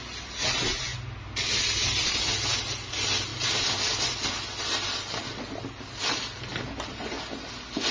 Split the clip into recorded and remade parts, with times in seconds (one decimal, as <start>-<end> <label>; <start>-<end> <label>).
0.0-7.9 recorded